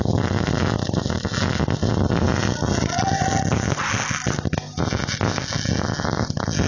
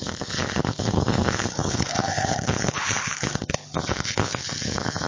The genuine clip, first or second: first